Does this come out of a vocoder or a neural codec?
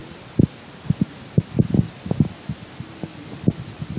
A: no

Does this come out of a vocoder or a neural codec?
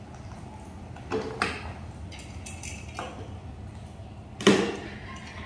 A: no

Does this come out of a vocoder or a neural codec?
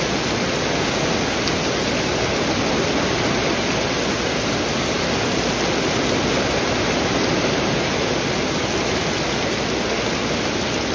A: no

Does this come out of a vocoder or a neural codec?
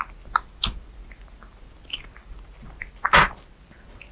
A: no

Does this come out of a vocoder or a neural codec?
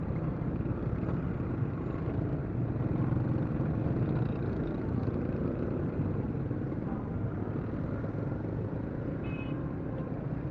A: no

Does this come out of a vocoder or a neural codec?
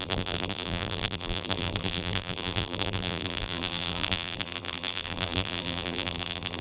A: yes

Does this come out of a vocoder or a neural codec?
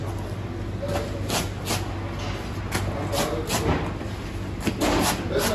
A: no